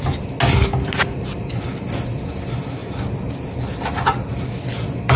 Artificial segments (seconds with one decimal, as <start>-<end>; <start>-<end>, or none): none